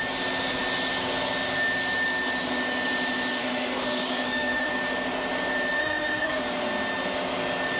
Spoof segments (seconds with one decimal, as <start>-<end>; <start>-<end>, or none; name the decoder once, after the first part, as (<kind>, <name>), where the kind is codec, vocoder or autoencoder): 3.4-4.7 (autoencoder, DAC-VAE); 5.8-6.4